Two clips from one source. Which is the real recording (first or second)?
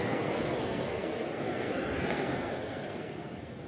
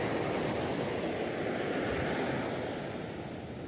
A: second